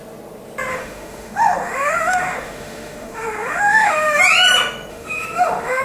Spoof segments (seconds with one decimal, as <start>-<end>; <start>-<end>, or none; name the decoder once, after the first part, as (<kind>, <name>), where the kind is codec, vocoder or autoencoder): 0.7-4.2 (autoencoder, DAC-VAE); 4.9-5.8